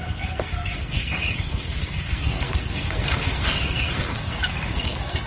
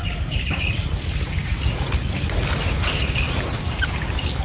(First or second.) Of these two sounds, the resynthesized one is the first